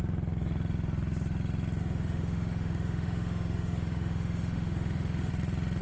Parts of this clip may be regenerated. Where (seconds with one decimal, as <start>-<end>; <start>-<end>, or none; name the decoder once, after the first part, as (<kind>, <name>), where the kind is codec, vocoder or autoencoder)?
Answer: 1.8-5.3 (autoencoder, DAC-VAE)